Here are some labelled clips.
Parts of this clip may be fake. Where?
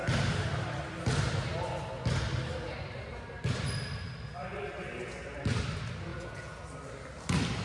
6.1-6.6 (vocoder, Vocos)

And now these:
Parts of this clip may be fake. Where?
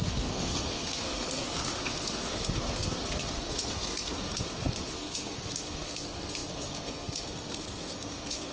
0.0-8.5 (codec, SNAC)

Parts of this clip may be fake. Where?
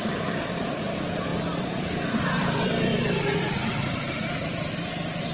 0.0-2.9 (vocoder, BigVGAN v2); 3.5-5.3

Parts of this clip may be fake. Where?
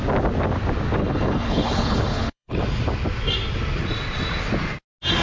1.0-2.6 (codec, HILCodec)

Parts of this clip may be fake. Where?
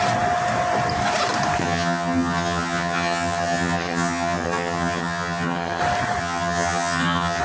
1.6-5.8 (vocoder, HiFi-GAN); 6.2-7.4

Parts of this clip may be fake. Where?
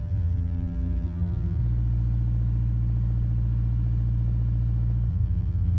0.0-1.6 (vocoder, BigVGAN v2); 5.1-5.8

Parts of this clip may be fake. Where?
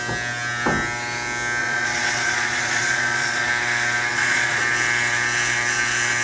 1.6-3.5 (vocoder, Vocos); 4.1-4.6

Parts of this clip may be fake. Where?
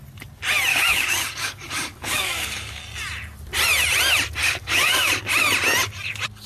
0.7-2.8 (codec, DAC); 4.4-5.2